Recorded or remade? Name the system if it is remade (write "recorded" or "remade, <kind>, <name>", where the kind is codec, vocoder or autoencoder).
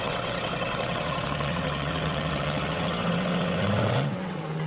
remade, vocoder, WaveNeXt